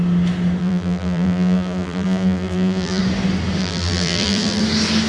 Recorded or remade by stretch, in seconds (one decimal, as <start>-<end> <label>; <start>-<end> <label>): 0.0-0.6 recorded; 0.6-3.0 remade; 3.0-3.6 recorded; 3.6-4.6 remade; 4.6-5.1 recorded

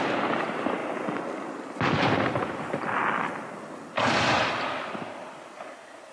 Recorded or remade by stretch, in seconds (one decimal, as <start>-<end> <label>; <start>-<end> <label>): 0.0-6.1 recorded